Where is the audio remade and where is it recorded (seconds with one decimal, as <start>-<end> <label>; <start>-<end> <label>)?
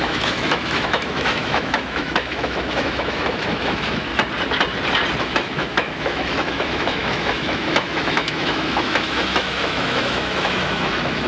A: 0.0-4.1 remade; 4.1-5.2 recorded; 5.2-11.3 remade